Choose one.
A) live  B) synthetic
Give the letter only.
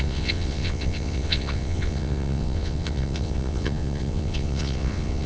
B